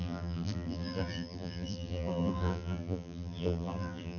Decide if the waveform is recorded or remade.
remade